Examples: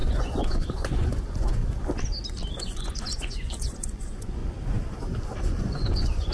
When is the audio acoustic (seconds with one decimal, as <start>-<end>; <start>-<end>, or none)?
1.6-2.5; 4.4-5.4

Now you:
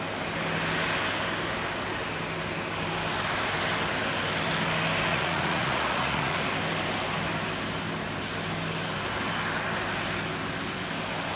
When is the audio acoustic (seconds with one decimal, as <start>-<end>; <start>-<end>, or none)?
0.0-5.1; 6.4-11.4

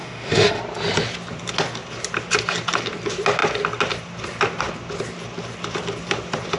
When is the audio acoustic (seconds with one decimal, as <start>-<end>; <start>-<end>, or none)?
0.6-6.6

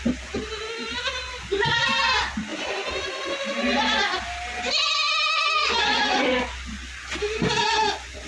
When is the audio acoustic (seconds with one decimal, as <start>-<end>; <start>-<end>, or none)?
0.0-8.3

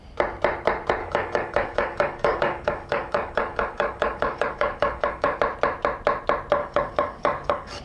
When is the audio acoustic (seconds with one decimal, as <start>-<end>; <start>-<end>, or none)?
0.0-1.0; 5.4-6.6

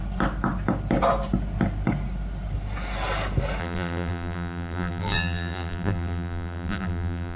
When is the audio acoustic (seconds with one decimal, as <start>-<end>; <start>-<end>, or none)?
0.0-3.6

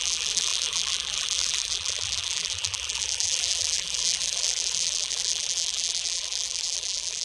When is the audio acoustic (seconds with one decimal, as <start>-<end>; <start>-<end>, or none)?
none